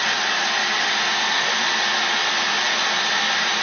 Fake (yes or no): yes